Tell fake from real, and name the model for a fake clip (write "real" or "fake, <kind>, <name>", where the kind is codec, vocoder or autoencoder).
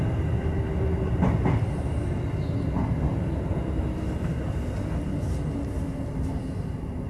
real